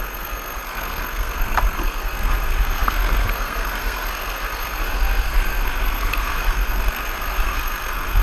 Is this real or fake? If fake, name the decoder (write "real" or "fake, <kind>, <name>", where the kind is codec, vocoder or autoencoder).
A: fake, codec, SNAC